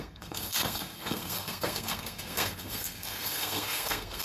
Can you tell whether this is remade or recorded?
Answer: remade